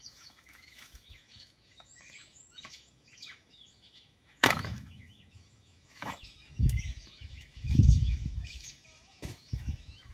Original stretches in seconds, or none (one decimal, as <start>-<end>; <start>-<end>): none